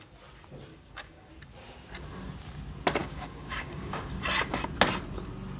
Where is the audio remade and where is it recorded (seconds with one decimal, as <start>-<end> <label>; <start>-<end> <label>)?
0.0-0.7 recorded; 0.7-1.3 remade; 1.3-3.0 recorded; 3.0-4.2 remade; 4.2-5.6 recorded